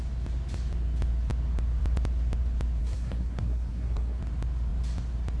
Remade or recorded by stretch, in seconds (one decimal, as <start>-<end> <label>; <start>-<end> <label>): 0.0-2.8 recorded; 2.8-4.2 remade; 4.2-5.4 recorded